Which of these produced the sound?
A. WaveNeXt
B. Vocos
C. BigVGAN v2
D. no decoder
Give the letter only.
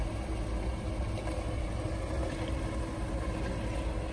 D